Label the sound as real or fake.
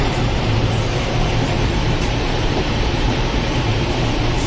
fake